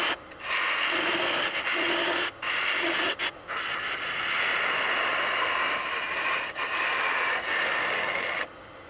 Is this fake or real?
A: real